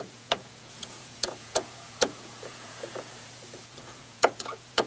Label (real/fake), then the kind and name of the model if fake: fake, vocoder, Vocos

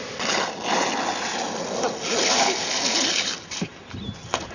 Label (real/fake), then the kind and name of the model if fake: real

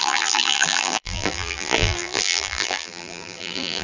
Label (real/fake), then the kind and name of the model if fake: fake, vocoder, BigVGAN v2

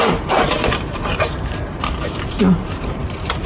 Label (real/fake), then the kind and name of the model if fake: fake, vocoder, BigVGAN v2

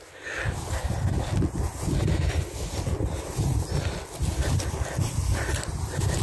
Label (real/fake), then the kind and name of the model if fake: real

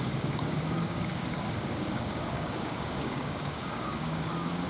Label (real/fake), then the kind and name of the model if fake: fake, codec, DAC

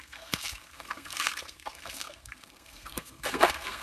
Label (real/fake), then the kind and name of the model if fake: fake, codec, SNAC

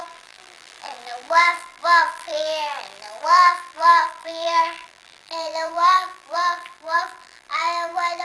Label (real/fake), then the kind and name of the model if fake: fake, vocoder, BigVGAN v2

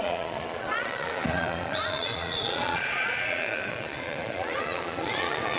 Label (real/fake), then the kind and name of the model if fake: fake, vocoder, Vocos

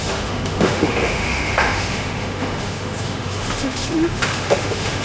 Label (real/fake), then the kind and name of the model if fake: fake, autoencoder, DAC-VAE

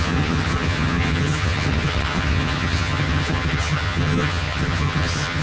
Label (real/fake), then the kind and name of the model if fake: fake, vocoder, HiFi-GAN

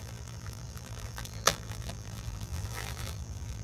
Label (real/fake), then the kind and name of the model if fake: fake, vocoder, BigVGAN v2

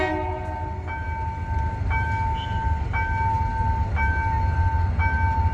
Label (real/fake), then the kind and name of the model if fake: real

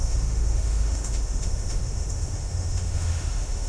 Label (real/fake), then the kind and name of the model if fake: fake, autoencoder, DAC-VAE